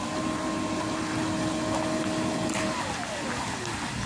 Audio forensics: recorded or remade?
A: recorded